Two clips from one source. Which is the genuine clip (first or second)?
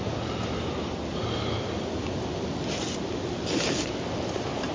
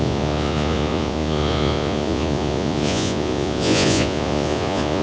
first